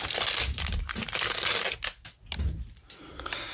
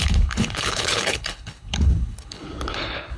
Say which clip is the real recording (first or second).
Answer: first